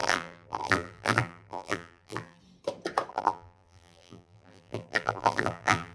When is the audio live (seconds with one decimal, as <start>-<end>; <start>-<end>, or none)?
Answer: 2.4-3.1